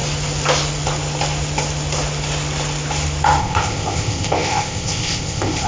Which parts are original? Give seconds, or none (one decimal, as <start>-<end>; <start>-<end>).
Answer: 0.0-3.4